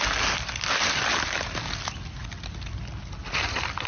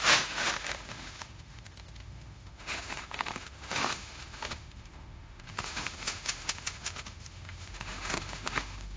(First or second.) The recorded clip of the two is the first